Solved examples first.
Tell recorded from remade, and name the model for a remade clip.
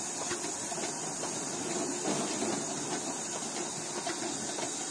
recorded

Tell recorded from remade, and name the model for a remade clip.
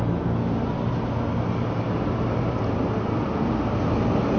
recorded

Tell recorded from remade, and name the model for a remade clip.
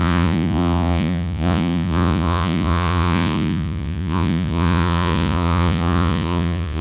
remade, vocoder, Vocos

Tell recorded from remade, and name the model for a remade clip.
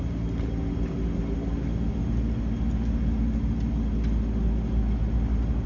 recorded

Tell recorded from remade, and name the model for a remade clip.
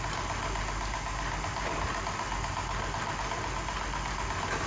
recorded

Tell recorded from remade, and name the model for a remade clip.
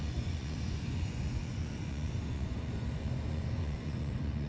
remade, vocoder, Vocos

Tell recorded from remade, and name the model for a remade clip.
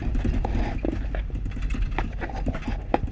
recorded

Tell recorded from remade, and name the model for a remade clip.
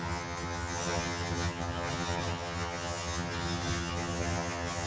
remade, vocoder, HiFi-GAN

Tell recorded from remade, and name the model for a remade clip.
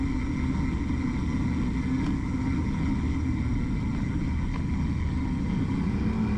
recorded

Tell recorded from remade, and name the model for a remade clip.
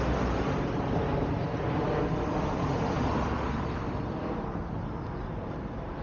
recorded